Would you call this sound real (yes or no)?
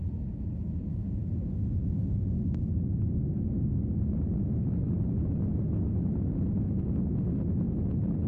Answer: yes